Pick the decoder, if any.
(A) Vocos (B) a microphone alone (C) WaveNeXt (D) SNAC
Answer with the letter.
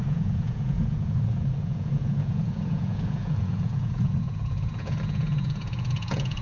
A